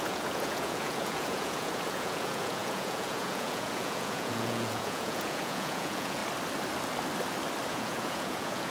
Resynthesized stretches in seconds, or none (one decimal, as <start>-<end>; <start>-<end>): 0.0-6.2; 7.7-8.7